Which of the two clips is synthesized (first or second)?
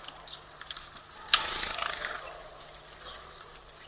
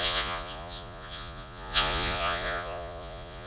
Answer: second